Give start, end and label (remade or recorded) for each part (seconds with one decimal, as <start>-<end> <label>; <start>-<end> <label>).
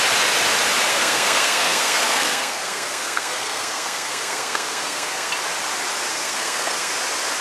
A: 0.0-0.9 recorded; 0.9-5.3 remade; 5.3-6.1 recorded; 6.1-6.9 remade; 6.9-7.4 recorded